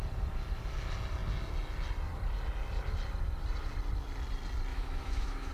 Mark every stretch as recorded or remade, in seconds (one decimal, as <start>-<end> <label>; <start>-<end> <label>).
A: 0.0-4.7 recorded; 4.7-5.5 remade